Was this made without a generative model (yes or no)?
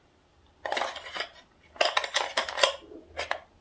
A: yes